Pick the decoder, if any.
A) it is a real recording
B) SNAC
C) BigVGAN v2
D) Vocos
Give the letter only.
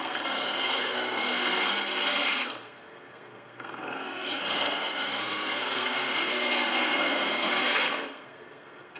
B